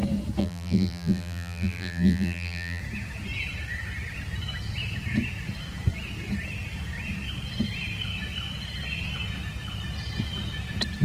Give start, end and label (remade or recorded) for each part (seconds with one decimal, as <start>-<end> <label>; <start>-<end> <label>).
0.0-0.4 recorded; 0.4-2.8 remade; 2.8-11.0 recorded